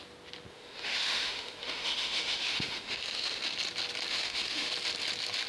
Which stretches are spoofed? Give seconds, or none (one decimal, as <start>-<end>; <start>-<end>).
0.5-3.4; 4.1-4.7